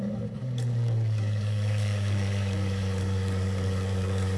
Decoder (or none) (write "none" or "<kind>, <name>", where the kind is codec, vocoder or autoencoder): codec, DAC